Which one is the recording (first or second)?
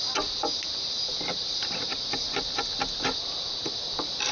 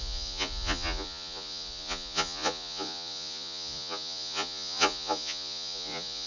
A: first